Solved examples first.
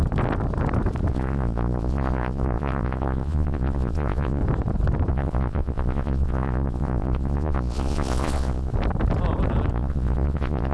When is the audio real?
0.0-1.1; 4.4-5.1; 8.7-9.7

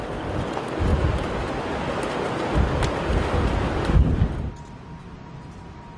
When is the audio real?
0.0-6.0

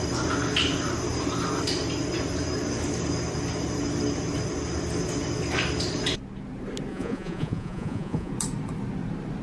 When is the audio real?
0.0-6.9; 8.3-9.4

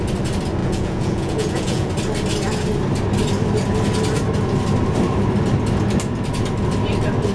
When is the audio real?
0.0-0.6; 1.9-7.3